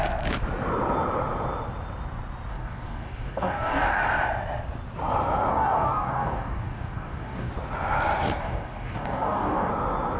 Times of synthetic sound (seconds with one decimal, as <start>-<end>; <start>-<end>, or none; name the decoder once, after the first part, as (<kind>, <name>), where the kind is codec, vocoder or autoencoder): 2.5-4.0 (codec, DAC); 5.5-7.5; 8.4-9.7